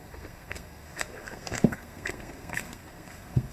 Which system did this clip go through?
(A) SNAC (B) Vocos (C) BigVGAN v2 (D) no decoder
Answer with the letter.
A